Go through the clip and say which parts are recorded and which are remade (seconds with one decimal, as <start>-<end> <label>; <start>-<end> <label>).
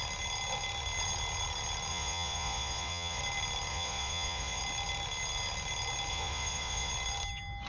0.0-1.9 recorded; 1.9-3.2 remade; 3.2-3.7 recorded; 3.7-4.6 remade; 4.6-6.1 recorded; 6.1-6.9 remade; 6.9-7.7 recorded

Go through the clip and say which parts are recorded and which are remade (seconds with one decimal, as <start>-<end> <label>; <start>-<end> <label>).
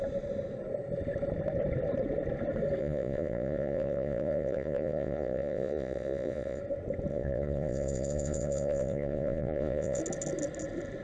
0.0-2.8 recorded; 2.8-6.6 remade; 6.6-7.1 recorded; 7.1-10.0 remade; 10.0-11.0 recorded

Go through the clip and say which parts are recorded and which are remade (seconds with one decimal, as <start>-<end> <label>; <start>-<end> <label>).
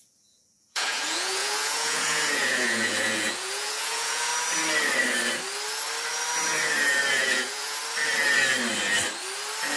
0.0-4.3 remade; 4.3-7.1 recorded; 7.1-7.8 remade; 7.8-9.8 recorded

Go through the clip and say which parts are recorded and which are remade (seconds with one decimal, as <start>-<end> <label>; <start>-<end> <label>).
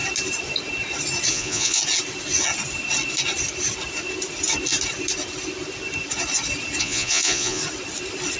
0.0-1.3 recorded; 1.3-1.8 remade; 1.8-6.8 recorded; 6.8-7.6 remade; 7.6-8.4 recorded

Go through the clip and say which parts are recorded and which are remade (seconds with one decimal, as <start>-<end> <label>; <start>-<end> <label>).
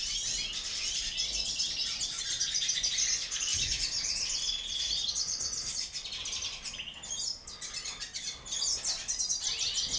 0.0-3.5 recorded; 3.5-4.8 remade; 4.8-10.0 recorded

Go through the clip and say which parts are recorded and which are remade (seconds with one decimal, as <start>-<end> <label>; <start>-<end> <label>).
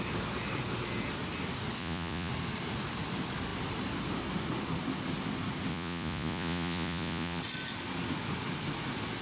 0.0-1.8 recorded; 1.8-2.3 remade; 2.3-5.7 recorded; 5.7-7.4 remade; 7.4-9.2 recorded